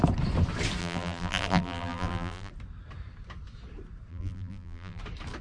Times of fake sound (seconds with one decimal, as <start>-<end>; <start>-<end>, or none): 0.8-2.5; 4.1-5.0